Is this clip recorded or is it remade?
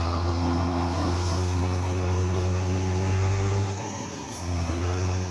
remade